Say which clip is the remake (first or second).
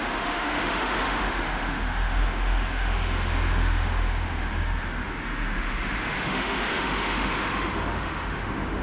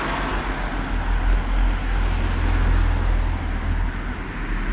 first